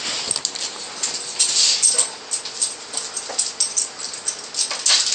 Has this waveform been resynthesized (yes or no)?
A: no